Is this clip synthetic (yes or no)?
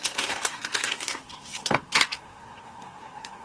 yes